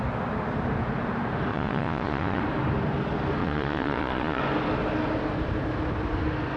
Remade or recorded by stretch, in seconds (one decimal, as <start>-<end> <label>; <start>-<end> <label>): 0.0-1.5 recorded; 1.5-2.4 remade; 2.4-3.4 recorded; 3.4-4.4 remade; 4.4-6.6 recorded